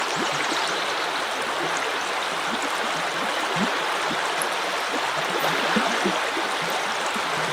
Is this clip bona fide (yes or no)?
yes